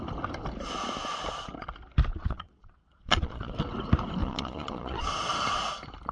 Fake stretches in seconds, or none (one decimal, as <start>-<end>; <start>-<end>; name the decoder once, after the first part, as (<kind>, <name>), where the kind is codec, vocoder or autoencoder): 2.1-3.5 (vocoder, Vocos); 4.2-5.1